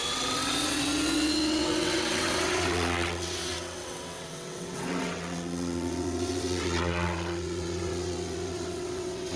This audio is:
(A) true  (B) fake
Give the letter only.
B